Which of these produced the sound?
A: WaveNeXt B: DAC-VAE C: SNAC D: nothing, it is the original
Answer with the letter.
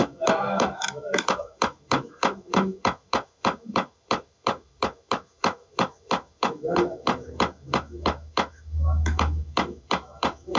B